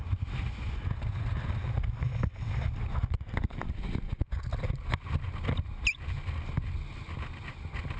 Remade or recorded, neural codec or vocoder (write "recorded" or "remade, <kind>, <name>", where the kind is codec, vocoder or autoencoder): recorded